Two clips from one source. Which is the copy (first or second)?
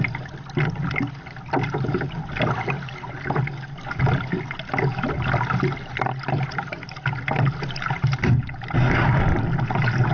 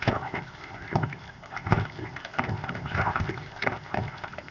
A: second